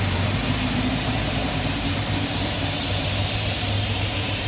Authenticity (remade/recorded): remade